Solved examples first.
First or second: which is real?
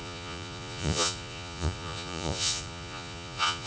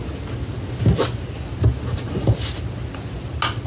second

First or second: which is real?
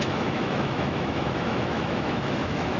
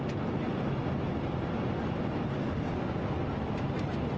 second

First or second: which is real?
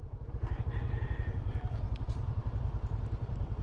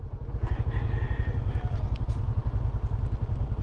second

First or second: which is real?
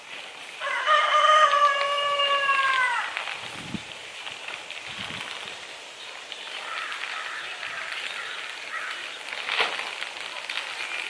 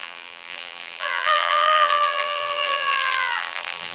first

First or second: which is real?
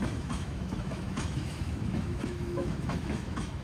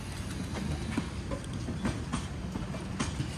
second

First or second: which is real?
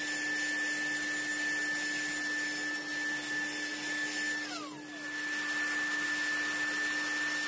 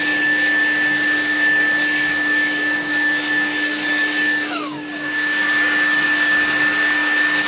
first